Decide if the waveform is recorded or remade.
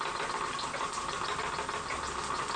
recorded